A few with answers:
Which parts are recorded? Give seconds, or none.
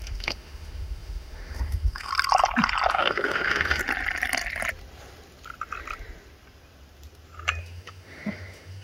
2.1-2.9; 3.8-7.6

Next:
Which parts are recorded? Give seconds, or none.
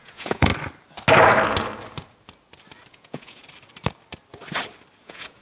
0.5-2.9; 3.4-5.0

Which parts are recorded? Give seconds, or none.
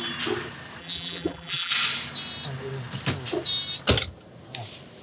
0.0-0.8; 1.7-5.0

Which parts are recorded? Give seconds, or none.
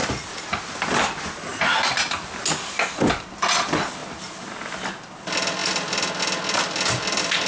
0.0-1.5; 2.4-7.5